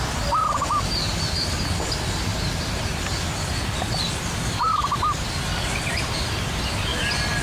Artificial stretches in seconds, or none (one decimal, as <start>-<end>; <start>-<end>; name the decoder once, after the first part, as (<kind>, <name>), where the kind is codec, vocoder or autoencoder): 2.3-3.0 (vocoder, BigVGAN v2)